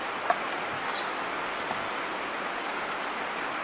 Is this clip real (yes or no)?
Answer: yes